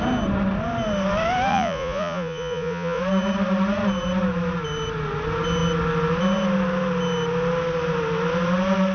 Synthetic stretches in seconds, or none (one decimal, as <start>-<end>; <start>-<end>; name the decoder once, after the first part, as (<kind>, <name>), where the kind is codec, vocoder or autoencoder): 1.5-3.0 (vocoder, Vocos)